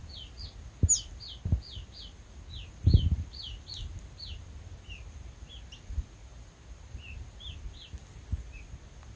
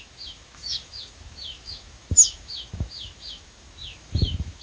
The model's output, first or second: second